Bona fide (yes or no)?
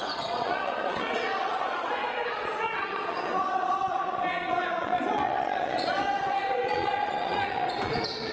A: no